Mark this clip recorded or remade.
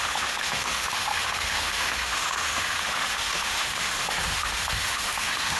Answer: remade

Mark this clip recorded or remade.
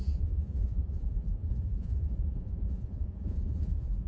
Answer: remade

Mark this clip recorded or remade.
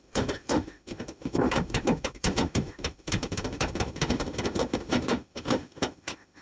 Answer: remade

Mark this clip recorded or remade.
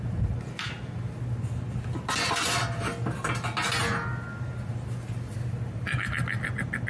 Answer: recorded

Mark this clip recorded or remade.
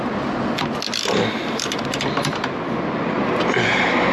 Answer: recorded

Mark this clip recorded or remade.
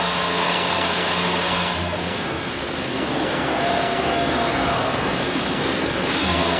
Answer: remade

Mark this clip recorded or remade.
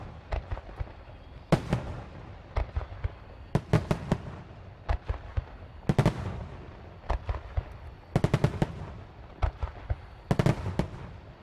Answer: recorded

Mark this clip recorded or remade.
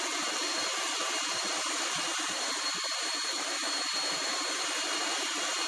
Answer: remade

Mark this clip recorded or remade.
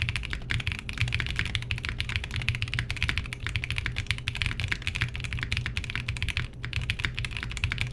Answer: recorded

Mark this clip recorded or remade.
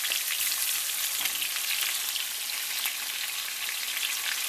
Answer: recorded